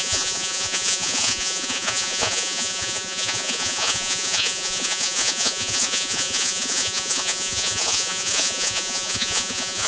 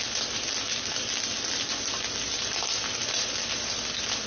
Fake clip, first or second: first